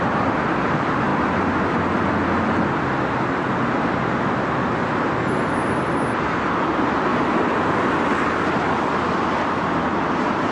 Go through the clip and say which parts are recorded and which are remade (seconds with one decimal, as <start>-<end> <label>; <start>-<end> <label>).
0.0-10.5 recorded